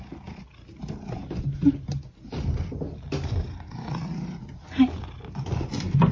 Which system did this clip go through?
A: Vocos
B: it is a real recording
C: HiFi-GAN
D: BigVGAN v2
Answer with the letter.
B